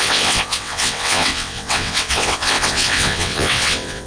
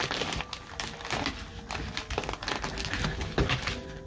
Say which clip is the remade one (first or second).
first